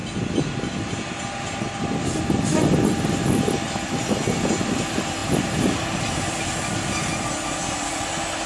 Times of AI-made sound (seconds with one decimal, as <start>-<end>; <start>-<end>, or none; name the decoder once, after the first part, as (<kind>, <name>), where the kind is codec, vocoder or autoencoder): none